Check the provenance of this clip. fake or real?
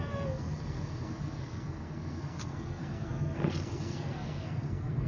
fake